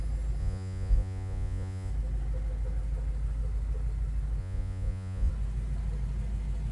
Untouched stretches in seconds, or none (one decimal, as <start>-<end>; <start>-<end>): 0.0-0.4; 1.9-4.4; 5.3-6.7

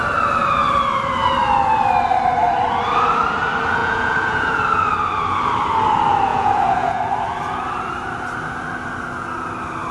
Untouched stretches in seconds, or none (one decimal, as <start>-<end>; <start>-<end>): 0.0-3.8; 4.6-6.3; 7.0-9.9

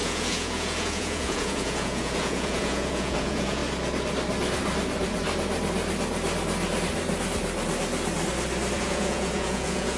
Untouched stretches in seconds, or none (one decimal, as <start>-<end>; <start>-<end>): 3.6-8.8

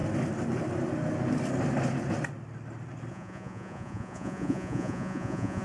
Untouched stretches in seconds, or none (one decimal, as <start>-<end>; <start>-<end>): 0.0-3.1

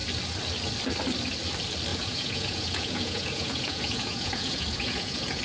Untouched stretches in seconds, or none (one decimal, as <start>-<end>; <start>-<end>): 0.0-1.9

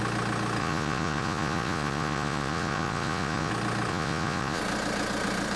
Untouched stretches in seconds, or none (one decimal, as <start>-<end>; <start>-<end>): 0.0-0.6; 3.5-3.9; 4.6-5.6

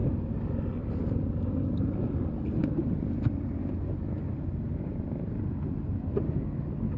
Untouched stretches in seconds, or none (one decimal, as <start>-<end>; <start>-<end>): 0.0-7.0